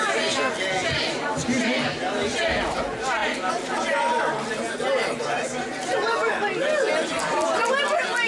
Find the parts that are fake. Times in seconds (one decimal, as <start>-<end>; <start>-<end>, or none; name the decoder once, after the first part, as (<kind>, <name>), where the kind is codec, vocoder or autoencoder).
none